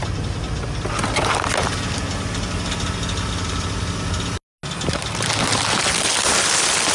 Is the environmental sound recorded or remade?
recorded